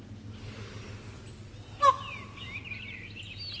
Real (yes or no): yes